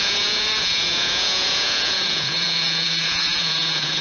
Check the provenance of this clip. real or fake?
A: fake